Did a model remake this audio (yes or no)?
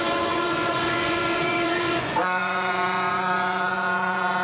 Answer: yes